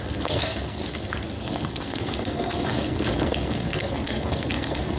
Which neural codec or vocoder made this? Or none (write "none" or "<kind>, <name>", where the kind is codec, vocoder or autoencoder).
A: codec, SNAC